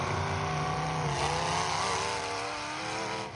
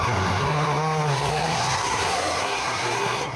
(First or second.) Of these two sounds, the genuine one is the first